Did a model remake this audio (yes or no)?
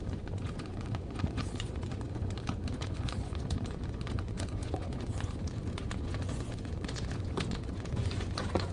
yes